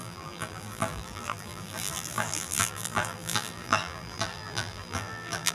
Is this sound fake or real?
fake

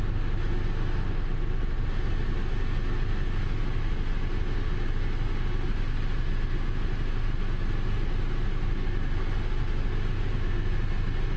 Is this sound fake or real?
real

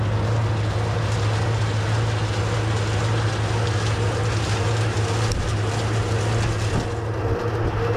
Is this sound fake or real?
real